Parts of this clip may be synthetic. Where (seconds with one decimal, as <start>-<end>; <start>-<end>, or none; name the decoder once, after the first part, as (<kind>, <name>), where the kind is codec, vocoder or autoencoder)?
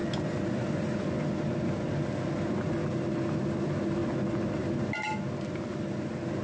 none